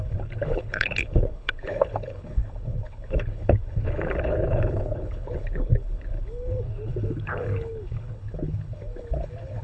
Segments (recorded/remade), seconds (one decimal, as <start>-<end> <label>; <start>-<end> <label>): 0.0-9.6 remade